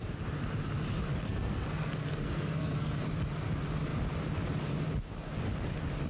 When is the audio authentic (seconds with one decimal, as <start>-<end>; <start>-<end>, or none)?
0.0-1.2; 3.0-6.1